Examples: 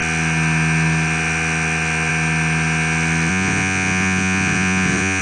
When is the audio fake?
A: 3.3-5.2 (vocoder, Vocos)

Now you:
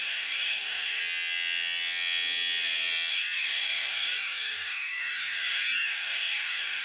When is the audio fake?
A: 0.0-1.0 (codec, DAC); 3.1-6.8

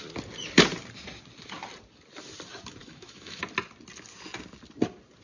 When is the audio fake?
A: 2.8-3.4 (autoencoder, DAC-VAE)

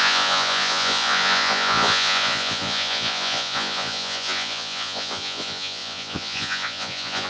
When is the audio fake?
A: 0.0-7.3 (vocoder, Vocos)

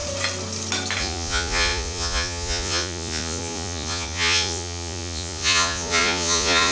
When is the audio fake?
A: 1.0-6.7 (vocoder, Vocos)

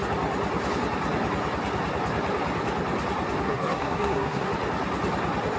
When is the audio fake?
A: 3.4-4.5 (codec, SNAC)

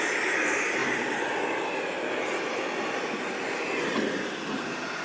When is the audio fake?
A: none